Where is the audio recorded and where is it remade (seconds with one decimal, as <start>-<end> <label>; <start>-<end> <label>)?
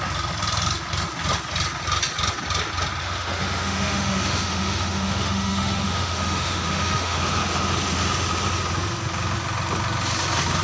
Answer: 0.0-3.0 recorded; 3.0-7.2 remade; 7.2-10.6 recorded